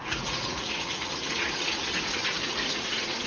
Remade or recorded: remade